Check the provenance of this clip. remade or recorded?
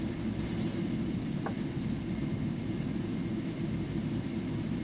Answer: recorded